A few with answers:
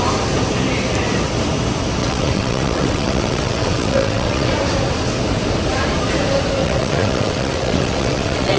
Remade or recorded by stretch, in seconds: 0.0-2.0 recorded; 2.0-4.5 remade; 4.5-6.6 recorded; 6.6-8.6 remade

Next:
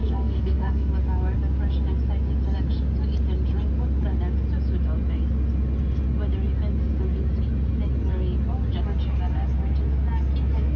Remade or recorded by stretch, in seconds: 0.0-0.9 remade; 0.9-10.8 recorded

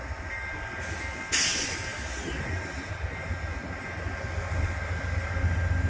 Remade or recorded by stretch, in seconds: 0.0-5.9 recorded

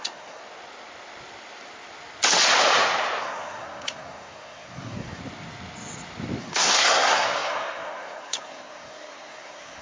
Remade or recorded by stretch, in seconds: 0.0-0.4 remade; 0.4-3.2 recorded; 3.2-5.2 remade; 5.2-6.4 recorded; 6.4-9.8 remade

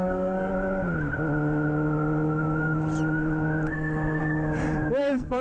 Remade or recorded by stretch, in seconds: 0.0-0.5 remade; 0.5-3.7 recorded; 3.7-4.2 remade; 4.2-5.0 recorded; 5.0-5.4 remade

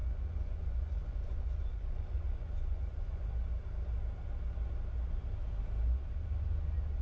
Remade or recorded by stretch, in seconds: 0.0-3.3 remade; 3.3-7.0 recorded

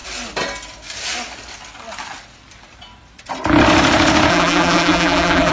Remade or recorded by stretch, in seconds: 0.0-4.3 recorded; 4.3-5.5 remade